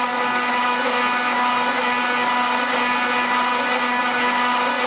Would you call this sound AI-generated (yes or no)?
no